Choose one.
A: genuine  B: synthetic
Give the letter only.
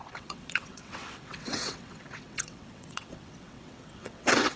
B